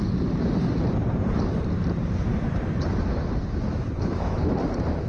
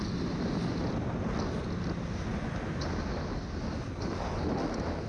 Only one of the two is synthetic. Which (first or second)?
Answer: first